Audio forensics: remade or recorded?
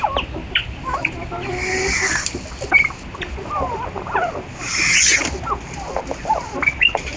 recorded